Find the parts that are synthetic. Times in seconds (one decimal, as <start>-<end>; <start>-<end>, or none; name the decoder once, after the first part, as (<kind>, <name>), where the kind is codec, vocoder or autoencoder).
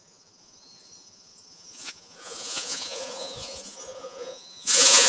0.0-5.1 (vocoder, Vocos)